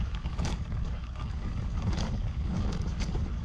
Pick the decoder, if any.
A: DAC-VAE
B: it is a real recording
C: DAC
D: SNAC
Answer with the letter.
C